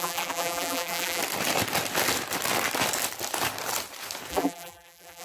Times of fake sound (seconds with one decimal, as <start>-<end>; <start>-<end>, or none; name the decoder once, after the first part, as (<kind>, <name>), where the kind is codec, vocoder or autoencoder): 0.0-1.2 (vocoder, BigVGAN v2); 4.3-5.2